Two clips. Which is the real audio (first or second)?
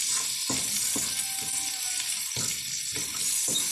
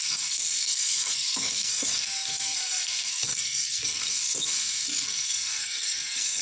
first